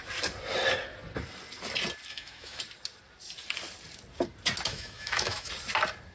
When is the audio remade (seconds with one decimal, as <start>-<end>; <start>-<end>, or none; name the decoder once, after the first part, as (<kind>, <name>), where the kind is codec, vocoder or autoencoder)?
2.1-2.6 (autoencoder, DAC-VAE); 4.7-5.5